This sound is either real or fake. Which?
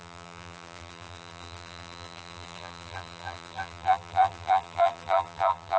fake